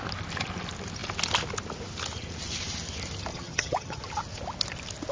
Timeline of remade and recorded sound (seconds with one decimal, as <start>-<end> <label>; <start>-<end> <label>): 0.0-3.3 recorded; 3.3-4.0 remade; 4.0-5.1 recorded